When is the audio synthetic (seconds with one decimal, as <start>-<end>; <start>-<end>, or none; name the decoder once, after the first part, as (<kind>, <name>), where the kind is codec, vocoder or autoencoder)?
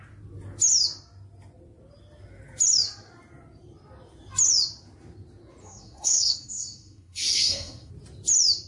5.6-7.9 (codec, SNAC)